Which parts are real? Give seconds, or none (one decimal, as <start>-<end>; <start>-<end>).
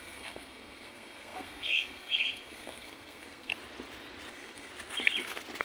3.5-4.3; 4.7-5.6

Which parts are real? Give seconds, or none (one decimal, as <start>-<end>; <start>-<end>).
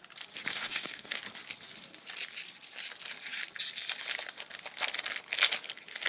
0.0-0.5; 1.2-6.1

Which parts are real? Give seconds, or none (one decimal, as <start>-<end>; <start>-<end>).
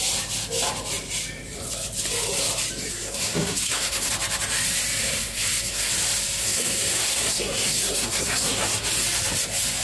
0.0-2.9; 4.1-5.0; 5.9-6.4; 8.9-9.8